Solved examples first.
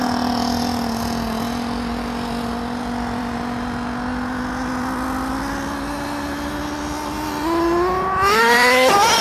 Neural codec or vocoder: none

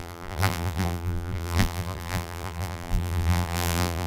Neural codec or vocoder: vocoder, BigVGAN v2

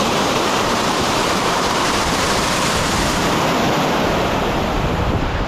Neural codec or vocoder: vocoder, BigVGAN v2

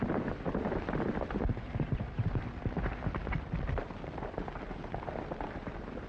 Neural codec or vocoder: vocoder, BigVGAN v2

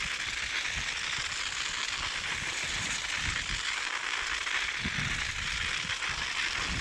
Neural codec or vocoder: none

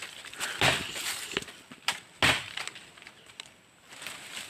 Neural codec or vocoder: none